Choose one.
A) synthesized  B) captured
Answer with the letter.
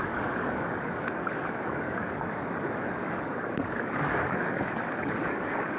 A